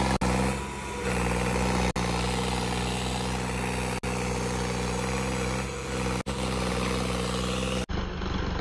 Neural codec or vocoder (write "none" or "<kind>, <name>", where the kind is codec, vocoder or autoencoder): none